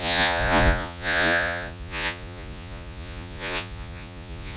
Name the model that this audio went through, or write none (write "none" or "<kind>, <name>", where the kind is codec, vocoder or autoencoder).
vocoder, Vocos